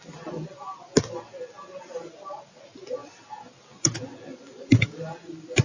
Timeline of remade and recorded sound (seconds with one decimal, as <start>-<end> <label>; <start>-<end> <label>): 0.0-5.6 recorded